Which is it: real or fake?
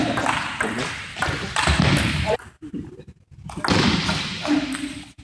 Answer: real